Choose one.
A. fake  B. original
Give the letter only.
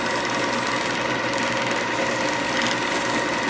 B